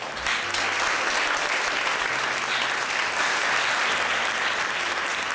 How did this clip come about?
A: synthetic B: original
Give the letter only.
B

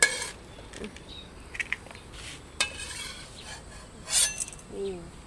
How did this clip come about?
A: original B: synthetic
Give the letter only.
A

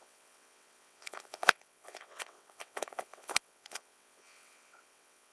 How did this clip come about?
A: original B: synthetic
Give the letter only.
B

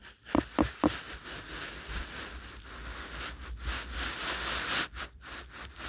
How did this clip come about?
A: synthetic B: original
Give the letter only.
B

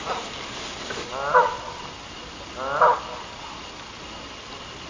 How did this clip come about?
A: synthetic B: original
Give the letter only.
B